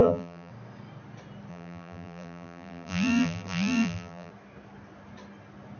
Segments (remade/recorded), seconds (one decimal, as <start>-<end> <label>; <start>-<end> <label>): 0.0-0.5 remade; 0.5-1.5 recorded; 1.5-4.3 remade; 4.3-5.8 recorded